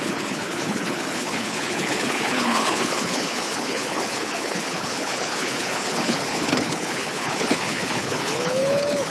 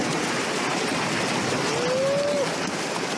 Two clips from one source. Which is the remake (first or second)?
first